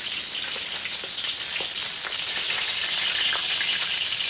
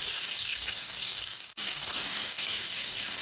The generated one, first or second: second